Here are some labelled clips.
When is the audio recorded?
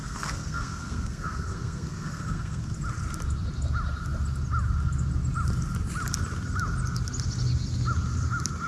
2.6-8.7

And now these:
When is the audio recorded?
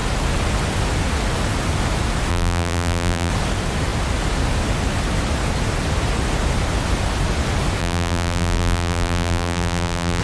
0.0-2.3; 3.3-7.8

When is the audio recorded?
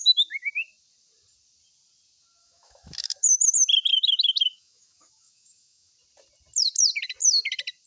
0.0-2.4; 3.5-3.9; 5.9-7.9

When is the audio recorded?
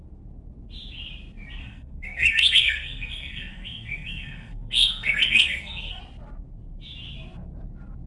0.0-1.6; 6.0-8.1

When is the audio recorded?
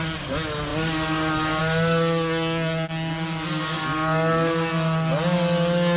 0.0-6.0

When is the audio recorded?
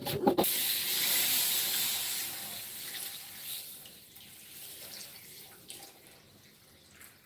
0.6-1.0; 5.4-7.3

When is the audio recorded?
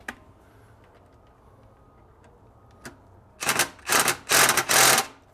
0.0-5.3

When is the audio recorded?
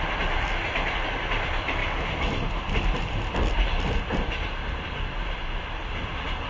0.0-6.5